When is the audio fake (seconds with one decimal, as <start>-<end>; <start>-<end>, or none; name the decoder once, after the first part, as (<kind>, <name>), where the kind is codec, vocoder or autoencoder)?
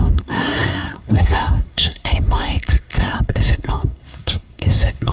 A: 0.0-5.1 (codec, SNAC)